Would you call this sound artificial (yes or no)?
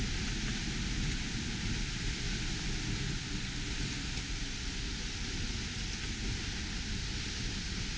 no